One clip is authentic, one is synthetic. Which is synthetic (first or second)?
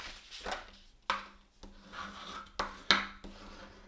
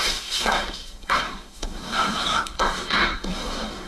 second